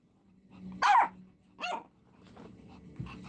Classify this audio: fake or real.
real